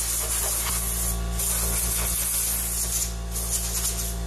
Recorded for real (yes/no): yes